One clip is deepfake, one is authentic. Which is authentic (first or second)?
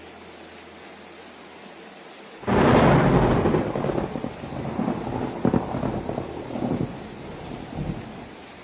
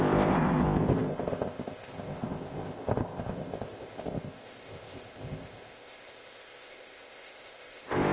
first